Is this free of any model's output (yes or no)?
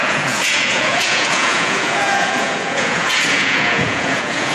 no